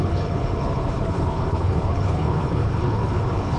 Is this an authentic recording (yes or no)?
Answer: no